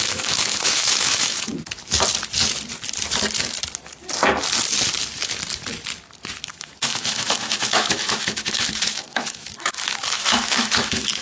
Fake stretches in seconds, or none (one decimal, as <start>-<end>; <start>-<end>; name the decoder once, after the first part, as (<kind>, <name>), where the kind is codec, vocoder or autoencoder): 0.0-1.5 (autoencoder, DAC-VAE); 6.5-11.2